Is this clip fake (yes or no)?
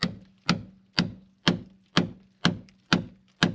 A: no